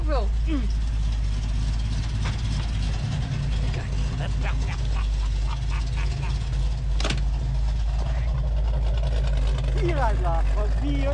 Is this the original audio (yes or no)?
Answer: yes